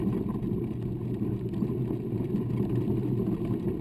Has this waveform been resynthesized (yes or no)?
no